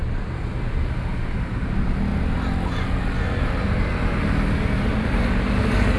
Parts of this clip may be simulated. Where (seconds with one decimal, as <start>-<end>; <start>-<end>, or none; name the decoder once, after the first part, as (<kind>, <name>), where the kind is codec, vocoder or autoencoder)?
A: none